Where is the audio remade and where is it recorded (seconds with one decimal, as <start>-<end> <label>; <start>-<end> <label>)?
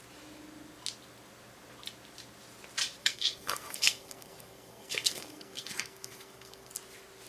0.0-3.0 recorded; 3.0-6.7 remade; 6.7-7.3 recorded